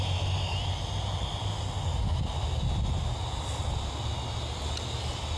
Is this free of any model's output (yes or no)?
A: yes